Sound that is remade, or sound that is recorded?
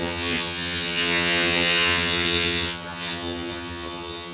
remade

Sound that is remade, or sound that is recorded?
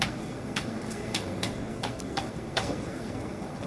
remade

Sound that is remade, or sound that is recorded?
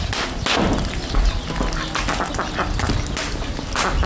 recorded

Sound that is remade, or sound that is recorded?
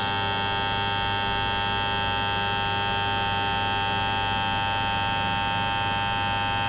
recorded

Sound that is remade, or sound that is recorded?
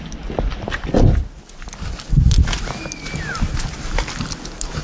recorded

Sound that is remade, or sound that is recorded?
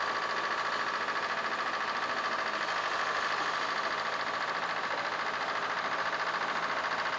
recorded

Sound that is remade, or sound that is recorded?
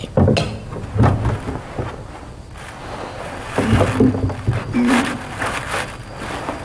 recorded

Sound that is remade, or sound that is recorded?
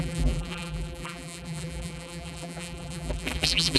remade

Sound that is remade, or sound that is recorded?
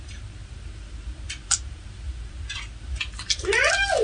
remade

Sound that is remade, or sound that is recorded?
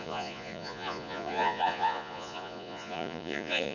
remade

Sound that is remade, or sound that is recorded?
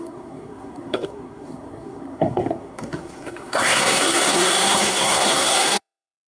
remade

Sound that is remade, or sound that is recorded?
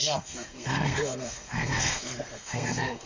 remade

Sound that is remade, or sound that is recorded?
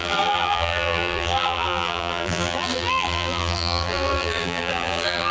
remade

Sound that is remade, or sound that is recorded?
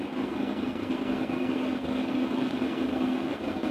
remade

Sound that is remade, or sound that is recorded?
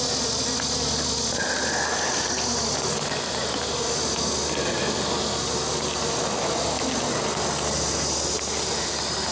recorded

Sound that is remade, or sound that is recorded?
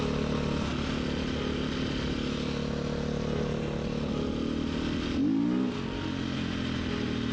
recorded